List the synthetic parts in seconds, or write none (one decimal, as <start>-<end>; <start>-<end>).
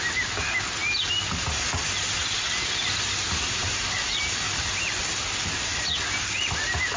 2.8-4.9